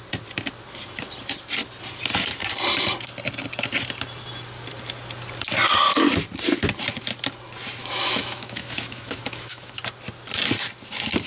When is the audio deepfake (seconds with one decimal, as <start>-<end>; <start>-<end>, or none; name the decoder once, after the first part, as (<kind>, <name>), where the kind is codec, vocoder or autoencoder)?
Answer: 7.8-9.8 (autoencoder, DAC-VAE)